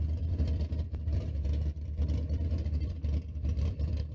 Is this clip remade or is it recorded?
remade